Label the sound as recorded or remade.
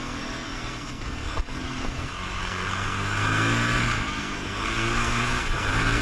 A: remade